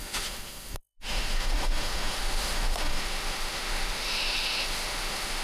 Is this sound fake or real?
fake